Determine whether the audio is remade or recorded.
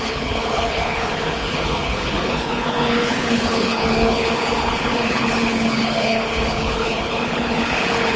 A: remade